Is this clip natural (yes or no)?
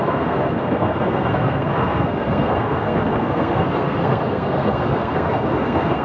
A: no